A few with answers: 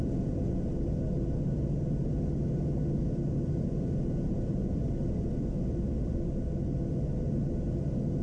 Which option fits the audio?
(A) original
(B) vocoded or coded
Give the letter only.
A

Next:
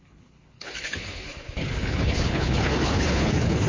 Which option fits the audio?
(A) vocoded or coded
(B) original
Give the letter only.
A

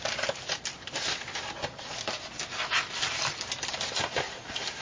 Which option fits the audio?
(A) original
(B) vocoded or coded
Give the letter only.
A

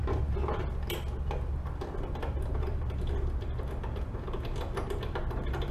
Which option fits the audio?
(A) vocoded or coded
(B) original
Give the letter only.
B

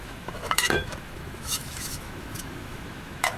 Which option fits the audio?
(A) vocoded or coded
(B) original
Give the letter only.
A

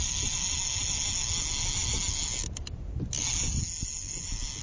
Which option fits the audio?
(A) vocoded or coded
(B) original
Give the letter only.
B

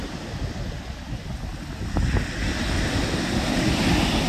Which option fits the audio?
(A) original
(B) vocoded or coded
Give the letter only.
A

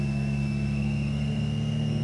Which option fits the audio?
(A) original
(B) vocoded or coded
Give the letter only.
B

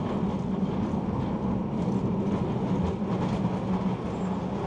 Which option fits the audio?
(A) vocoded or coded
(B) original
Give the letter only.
B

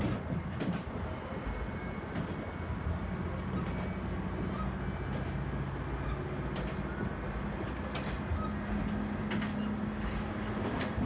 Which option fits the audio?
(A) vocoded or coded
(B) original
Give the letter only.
B